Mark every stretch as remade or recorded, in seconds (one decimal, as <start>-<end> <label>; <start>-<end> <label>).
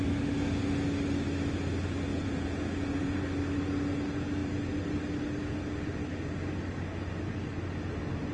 0.0-2.1 recorded; 2.1-3.2 remade; 3.2-8.3 recorded